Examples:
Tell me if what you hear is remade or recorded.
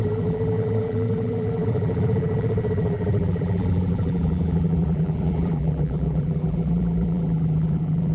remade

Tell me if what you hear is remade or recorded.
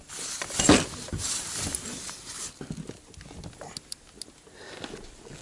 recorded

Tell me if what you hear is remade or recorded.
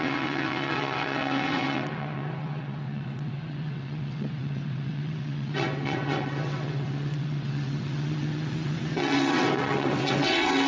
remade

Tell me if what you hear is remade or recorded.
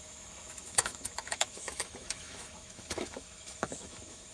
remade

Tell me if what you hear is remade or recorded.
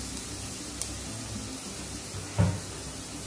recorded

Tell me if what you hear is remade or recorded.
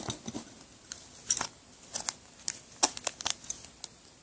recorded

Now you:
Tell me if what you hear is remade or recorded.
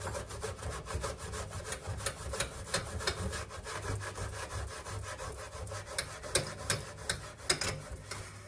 recorded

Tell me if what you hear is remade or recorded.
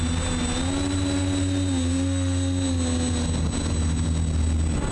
recorded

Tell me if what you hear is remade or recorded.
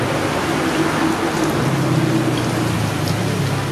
recorded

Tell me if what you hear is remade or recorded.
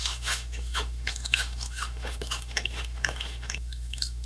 remade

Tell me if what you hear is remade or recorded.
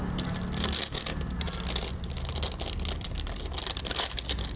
recorded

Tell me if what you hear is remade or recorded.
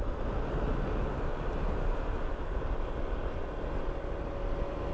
recorded